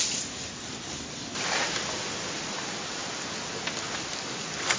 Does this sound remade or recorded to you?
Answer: recorded